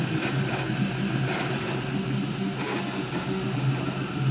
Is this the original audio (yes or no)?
yes